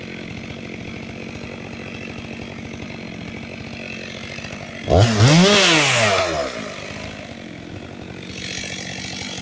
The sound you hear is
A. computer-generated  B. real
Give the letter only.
B